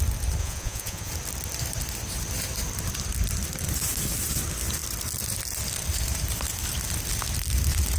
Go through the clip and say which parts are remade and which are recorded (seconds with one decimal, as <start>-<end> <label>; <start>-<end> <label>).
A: 0.0-0.4 recorded; 0.4-1.1 remade; 1.1-8.0 recorded